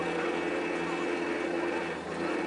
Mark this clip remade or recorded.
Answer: recorded